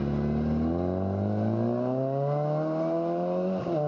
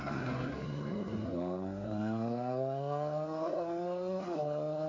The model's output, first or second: second